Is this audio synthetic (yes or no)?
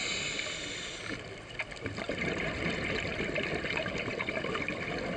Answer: no